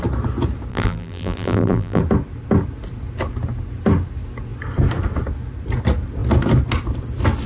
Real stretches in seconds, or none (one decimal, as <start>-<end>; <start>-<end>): 0.0-0.7; 2.0-7.5